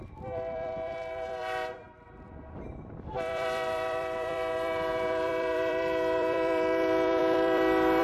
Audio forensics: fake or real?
fake